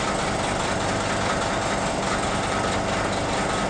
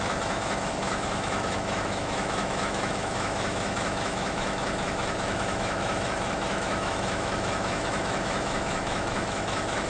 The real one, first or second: first